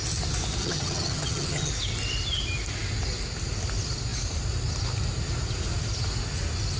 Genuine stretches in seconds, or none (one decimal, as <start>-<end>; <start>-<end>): 0.0-0.6; 1.7-6.8